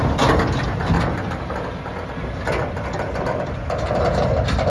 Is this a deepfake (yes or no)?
no